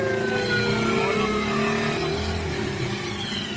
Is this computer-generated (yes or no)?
no